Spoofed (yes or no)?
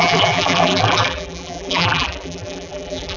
yes